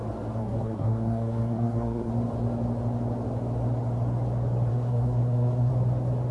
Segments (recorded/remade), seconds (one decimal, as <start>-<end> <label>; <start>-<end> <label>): 0.0-0.4 recorded; 0.4-2.1 remade; 2.1-4.7 recorded; 4.7-5.7 remade; 5.7-6.3 recorded